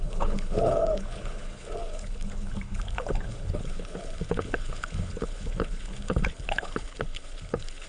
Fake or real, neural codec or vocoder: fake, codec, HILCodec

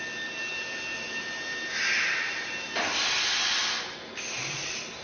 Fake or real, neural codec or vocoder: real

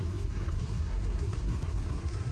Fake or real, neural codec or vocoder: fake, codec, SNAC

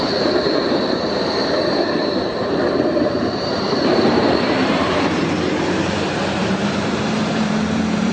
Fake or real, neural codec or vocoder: fake, vocoder, BigVGAN v2